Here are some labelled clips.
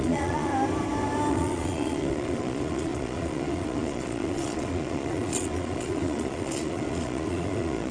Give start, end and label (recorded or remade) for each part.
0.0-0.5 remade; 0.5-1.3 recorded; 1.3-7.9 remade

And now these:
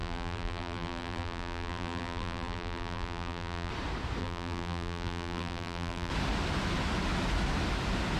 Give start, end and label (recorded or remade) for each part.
0.0-3.7 remade; 3.7-4.2 recorded; 4.2-6.1 remade; 6.1-8.2 recorded

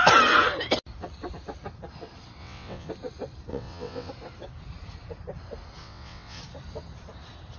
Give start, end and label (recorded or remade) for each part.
0.0-2.4 recorded; 2.4-2.9 remade; 2.9-3.5 recorded; 3.5-4.1 remade; 4.1-5.8 recorded; 5.8-6.4 remade; 6.4-7.6 recorded

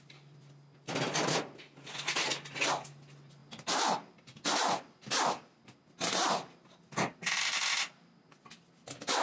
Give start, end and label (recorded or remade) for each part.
0.0-9.2 recorded

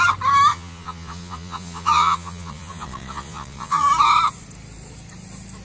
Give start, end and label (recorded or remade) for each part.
0.0-0.5 recorded; 0.5-3.9 remade; 3.9-5.6 recorded

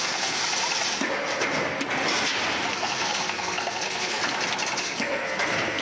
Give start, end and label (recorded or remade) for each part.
0.0-0.4 remade; 0.4-2.7 recorded; 2.7-4.2 remade; 4.2-4.8 recorded; 4.8-5.8 remade

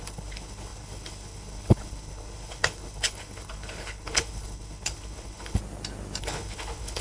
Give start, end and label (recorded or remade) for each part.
0.0-5.6 remade; 5.6-6.2 recorded; 6.2-7.0 remade

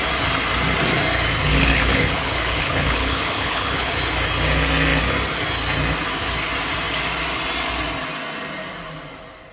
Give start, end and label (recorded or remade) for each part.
0.0-1.5 recorded; 1.5-3.9 remade; 3.9-9.5 recorded